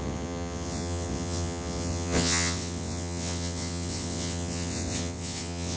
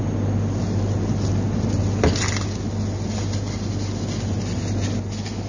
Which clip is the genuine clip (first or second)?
second